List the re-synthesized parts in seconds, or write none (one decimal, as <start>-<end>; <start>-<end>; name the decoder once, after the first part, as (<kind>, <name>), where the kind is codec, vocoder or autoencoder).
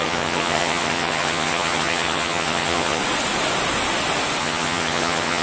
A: 0.0-3.0 (vocoder, HiFi-GAN); 4.4-5.4